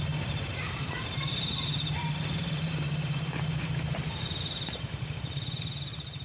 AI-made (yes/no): yes